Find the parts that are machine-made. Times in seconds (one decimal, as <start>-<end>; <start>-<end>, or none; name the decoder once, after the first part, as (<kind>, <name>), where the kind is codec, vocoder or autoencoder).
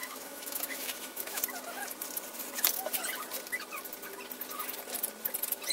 0.0-1.4 (autoencoder, DAC-VAE)